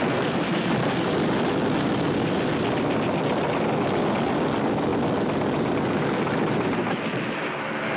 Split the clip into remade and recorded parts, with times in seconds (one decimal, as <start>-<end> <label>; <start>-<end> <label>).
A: 0.0-4.9 remade; 4.9-6.4 recorded; 6.4-8.0 remade